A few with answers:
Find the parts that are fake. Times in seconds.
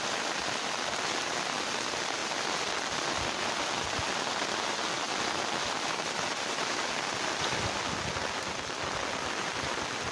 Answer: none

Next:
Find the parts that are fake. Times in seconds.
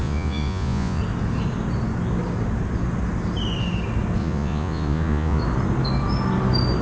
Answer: 0.0-1.0; 4.2-5.4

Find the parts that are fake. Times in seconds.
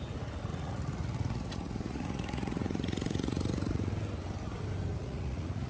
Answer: 0.5-3.9; 5.0-5.7